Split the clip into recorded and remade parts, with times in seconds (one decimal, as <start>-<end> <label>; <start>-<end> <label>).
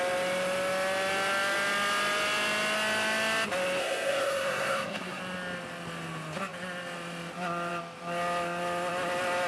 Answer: 0.0-3.8 recorded; 3.8-5.2 remade; 5.2-9.5 recorded